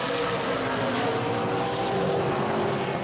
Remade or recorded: recorded